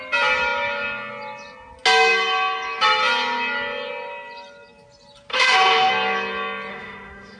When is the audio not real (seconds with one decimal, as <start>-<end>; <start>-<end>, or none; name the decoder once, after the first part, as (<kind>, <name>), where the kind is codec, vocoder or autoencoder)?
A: 5.3-5.9 (autoencoder, DAC-VAE); 6.7-7.4